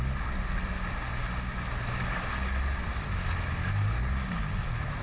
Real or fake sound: real